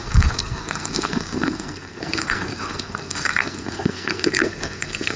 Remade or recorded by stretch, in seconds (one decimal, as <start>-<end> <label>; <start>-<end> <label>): 0.0-5.2 remade